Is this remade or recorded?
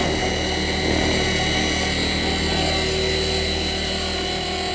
recorded